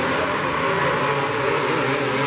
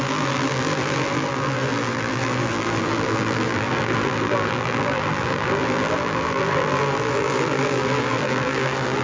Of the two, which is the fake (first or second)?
second